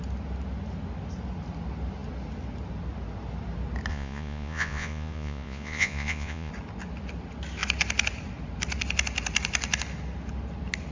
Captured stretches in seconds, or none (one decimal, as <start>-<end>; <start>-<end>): 0.0-3.9; 6.5-10.9